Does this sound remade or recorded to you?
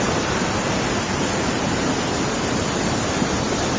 recorded